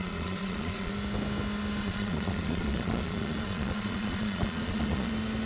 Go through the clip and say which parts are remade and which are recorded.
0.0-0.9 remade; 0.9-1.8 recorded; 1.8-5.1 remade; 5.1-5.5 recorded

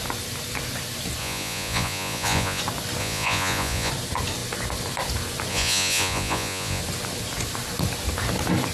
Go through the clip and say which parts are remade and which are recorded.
0.0-1.2 recorded; 1.2-2.6 remade; 2.6-3.0 recorded; 3.0-3.9 remade; 3.9-5.5 recorded; 5.5-6.8 remade; 6.8-8.7 recorded

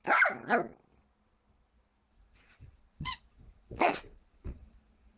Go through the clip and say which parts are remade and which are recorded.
0.0-2.1 recorded; 2.1-5.2 remade

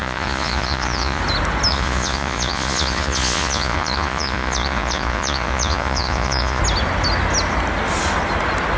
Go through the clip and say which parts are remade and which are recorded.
0.0-1.2 remade; 1.2-1.7 recorded; 1.7-6.6 remade; 6.6-8.8 recorded

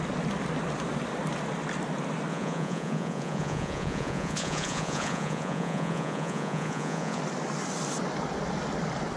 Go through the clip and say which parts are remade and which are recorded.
0.0-2.3 recorded; 2.3-7.2 remade; 7.2-9.2 recorded

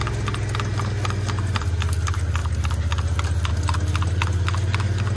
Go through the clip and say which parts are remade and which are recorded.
0.0-5.2 recorded

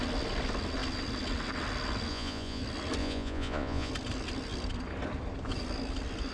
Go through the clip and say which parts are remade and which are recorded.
0.0-2.1 recorded; 2.1-2.6 remade; 2.6-3.0 recorded; 3.0-3.9 remade; 3.9-6.3 recorded